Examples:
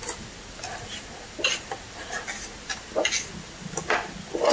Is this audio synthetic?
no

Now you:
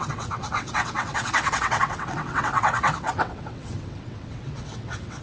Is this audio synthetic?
yes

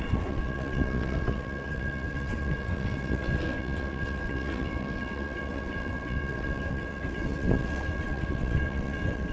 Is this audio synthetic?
yes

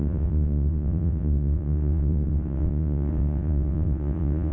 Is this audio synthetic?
yes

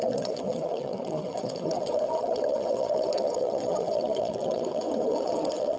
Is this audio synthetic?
yes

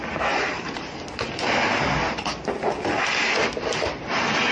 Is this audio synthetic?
no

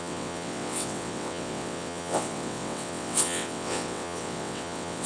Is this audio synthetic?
yes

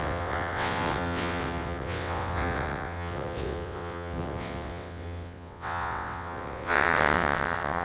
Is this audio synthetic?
yes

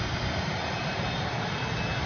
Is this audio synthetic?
no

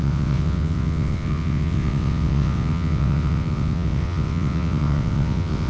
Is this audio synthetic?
yes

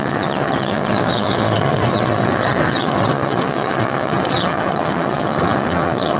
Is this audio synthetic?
yes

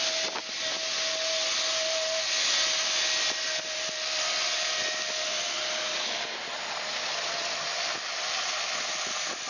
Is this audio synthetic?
no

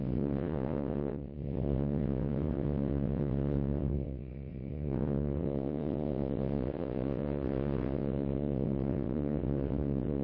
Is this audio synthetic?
yes